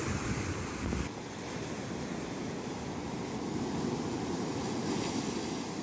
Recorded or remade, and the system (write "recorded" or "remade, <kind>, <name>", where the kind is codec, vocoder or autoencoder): recorded